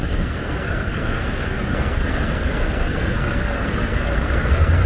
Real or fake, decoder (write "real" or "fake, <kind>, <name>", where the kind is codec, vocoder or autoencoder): fake, codec, SNAC